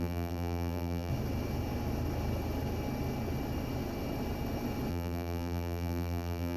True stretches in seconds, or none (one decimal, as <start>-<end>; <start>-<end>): 1.1-4.9